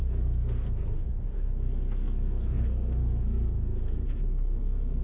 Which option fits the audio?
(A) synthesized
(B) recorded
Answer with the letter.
A